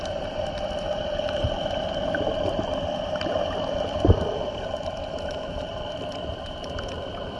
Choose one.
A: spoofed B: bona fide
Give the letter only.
B